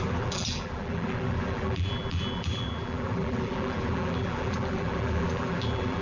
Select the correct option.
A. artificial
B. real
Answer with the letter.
A